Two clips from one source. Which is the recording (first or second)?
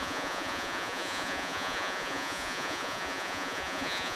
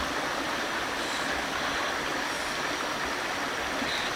second